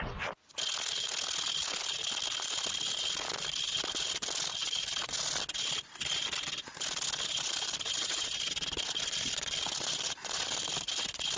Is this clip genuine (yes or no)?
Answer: yes